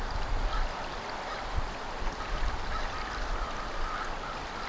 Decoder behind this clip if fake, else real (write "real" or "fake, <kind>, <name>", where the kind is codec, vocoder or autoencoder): real